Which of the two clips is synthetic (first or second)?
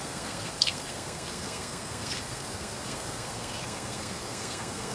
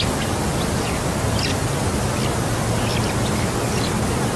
first